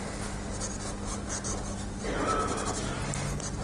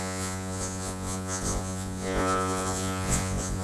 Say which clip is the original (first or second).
first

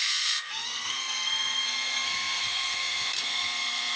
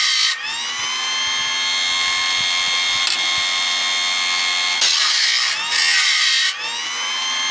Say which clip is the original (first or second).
second